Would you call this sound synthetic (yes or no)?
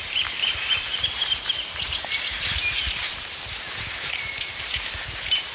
yes